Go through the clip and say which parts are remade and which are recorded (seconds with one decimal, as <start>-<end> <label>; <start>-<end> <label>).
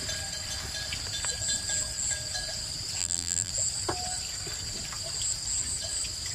0.0-3.0 recorded; 3.0-3.5 remade; 3.5-6.3 recorded